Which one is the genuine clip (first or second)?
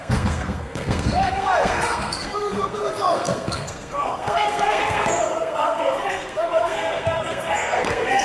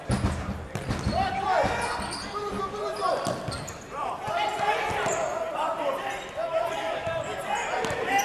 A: second